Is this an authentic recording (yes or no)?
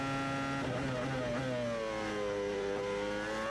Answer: yes